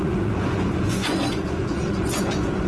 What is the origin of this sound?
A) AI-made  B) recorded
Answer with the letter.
A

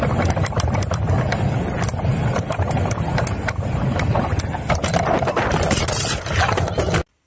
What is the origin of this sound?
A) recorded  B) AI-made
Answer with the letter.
A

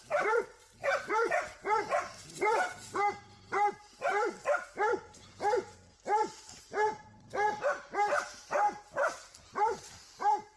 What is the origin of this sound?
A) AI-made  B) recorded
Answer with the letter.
A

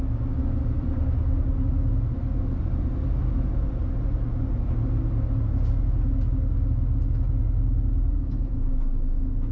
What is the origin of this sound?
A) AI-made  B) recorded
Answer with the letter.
B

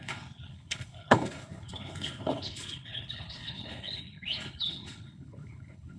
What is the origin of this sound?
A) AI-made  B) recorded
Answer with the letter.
A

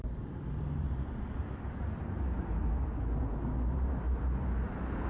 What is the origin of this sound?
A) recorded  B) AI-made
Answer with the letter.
A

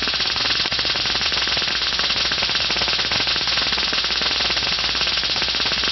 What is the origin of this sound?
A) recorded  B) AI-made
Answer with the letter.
B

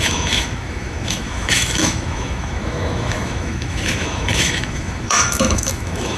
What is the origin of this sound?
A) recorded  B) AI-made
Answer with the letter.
B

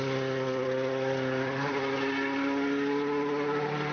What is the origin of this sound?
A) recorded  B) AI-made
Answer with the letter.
A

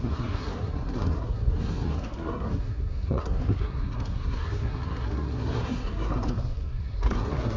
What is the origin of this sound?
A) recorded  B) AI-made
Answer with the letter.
B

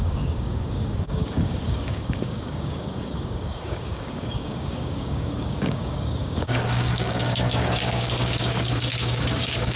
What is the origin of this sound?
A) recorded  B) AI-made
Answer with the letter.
B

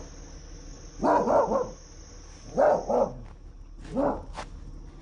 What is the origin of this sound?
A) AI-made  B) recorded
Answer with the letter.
B